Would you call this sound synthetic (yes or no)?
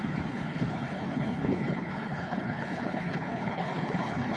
yes